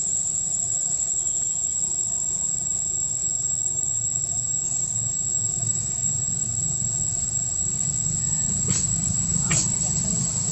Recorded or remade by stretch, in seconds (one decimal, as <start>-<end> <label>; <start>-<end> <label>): 0.0-5.6 recorded; 5.6-6.1 remade; 6.1-10.5 recorded

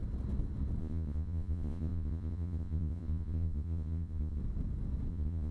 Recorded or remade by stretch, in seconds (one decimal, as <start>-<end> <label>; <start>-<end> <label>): 0.0-0.8 recorded; 0.8-4.4 remade; 4.4-5.1 recorded; 5.1-5.5 remade

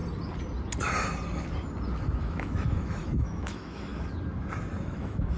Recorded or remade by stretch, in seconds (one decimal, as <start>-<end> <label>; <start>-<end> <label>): 0.0-2.2 recorded; 2.2-3.9 remade; 3.9-4.8 recorded; 4.8-5.4 remade